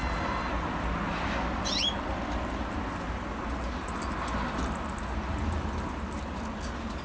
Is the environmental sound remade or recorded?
recorded